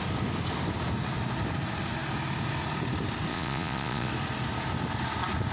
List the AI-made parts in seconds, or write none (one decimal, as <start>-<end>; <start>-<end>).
3.3-4.1